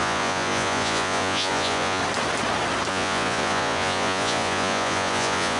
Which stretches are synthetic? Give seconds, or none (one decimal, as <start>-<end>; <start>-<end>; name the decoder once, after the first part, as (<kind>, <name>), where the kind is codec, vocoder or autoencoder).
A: 0.0-2.0 (vocoder, Vocos); 2.9-5.6